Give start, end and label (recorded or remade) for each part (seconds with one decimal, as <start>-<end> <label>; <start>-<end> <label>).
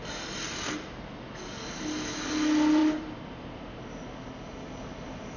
0.0-5.4 recorded